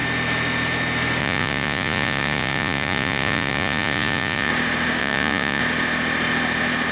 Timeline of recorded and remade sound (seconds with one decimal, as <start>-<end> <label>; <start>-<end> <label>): 0.0-1.2 recorded; 1.2-4.5 remade; 4.5-5.0 recorded; 5.0-5.6 remade; 5.6-6.9 recorded